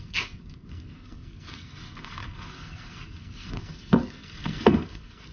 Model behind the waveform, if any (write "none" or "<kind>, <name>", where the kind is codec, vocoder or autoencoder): codec, SNAC